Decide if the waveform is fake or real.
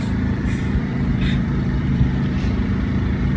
fake